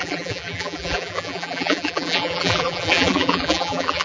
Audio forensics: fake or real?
fake